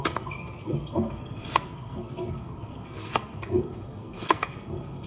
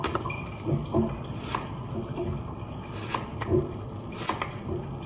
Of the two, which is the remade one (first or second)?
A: first